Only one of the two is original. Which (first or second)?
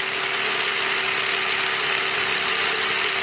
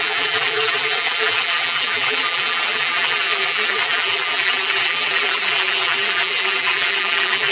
first